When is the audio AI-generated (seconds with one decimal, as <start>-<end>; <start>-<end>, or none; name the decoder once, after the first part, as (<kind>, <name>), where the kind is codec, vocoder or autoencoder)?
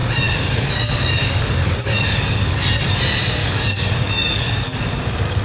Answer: 0.0-2.8 (codec, DAC); 3.4-4.9